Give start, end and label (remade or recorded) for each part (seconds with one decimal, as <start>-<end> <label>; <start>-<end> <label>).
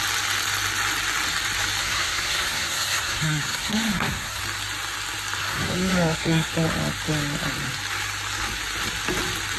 0.0-1.8 recorded; 1.8-4.4 remade; 4.4-5.4 recorded; 5.4-6.5 remade; 6.5-9.6 recorded